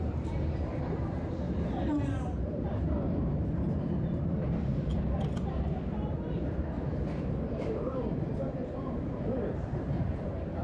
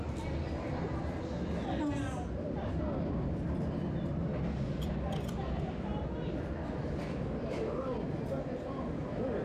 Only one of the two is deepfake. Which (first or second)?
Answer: first